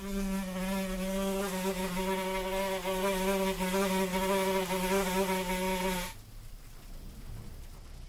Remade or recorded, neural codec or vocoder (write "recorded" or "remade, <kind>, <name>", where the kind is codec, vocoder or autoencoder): recorded